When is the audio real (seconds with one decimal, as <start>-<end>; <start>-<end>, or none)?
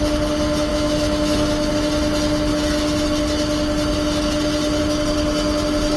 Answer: 0.0-0.7; 1.7-6.0